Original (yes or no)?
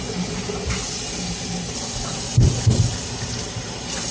yes